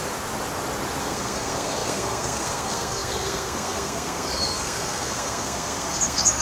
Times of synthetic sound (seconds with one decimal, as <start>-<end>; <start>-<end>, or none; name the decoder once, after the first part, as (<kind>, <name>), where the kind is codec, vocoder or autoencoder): 1.0-6.4 (codec, SNAC)